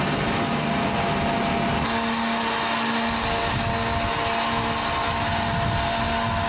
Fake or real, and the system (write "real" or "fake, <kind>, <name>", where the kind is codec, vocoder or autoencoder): real